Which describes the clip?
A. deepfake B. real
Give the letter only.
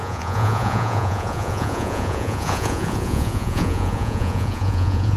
A